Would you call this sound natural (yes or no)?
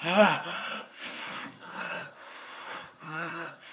no